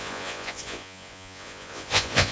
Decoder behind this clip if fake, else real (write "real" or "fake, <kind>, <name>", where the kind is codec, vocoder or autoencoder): fake, vocoder, Vocos